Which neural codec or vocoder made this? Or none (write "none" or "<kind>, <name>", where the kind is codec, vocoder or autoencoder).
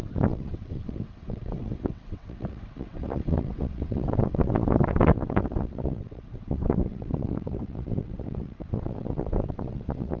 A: vocoder, WaveNeXt